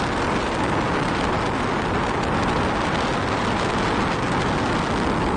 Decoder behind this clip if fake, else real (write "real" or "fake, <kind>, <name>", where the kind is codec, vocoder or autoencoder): real